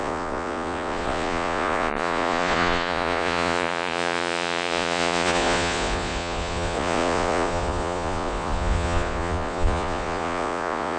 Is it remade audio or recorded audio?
remade